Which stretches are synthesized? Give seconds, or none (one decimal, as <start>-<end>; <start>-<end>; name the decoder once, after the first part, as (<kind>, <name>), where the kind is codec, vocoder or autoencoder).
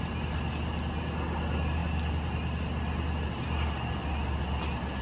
none